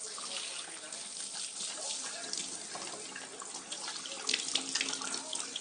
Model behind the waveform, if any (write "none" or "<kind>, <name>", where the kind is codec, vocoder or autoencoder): none